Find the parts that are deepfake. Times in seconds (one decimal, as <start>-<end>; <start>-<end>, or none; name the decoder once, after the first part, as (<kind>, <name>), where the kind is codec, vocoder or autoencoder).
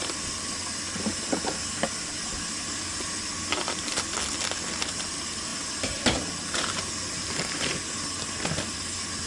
none